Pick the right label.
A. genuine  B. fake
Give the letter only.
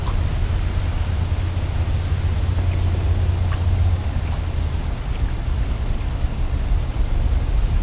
A